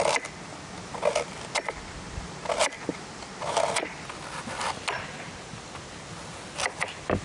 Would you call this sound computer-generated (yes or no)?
no